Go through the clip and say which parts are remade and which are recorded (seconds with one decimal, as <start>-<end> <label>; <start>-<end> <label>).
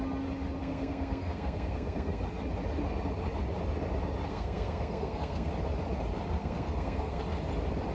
0.0-0.6 recorded; 0.6-2.2 remade; 2.2-4.3 recorded; 4.3-5.5 remade; 5.5-6.4 recorded; 6.4-7.2 remade; 7.2-7.9 recorded